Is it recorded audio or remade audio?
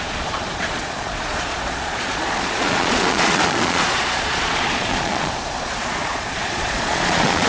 remade